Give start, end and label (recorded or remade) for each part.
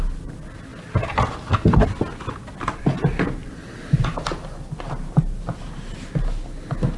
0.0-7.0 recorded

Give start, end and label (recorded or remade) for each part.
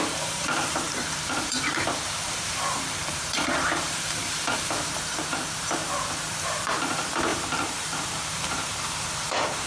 0.0-5.8 remade; 5.8-6.4 recorded; 6.4-9.7 remade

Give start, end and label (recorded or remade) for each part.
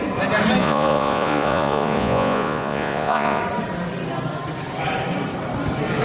0.0-0.6 recorded; 0.6-3.4 remade; 3.4-6.0 recorded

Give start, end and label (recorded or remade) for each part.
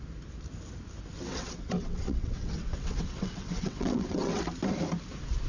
0.0-1.3 recorded; 1.3-4.4 remade; 4.4-5.5 recorded